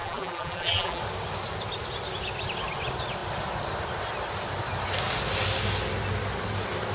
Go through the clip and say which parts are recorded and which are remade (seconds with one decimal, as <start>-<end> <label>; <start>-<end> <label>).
0.0-1.0 remade; 1.0-6.9 recorded